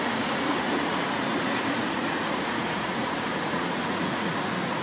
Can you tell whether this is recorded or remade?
remade